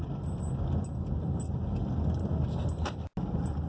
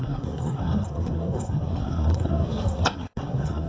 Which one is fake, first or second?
second